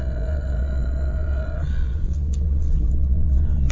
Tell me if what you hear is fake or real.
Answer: fake